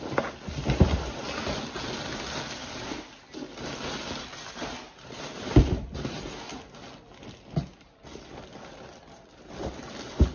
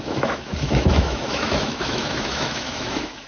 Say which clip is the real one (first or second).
first